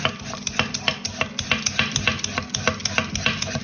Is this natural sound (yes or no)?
yes